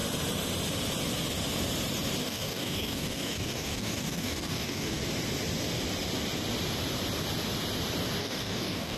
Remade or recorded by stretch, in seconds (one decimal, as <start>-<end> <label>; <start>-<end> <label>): 0.0-2.2 recorded; 2.2-5.0 remade; 5.0-8.2 recorded; 8.2-9.0 remade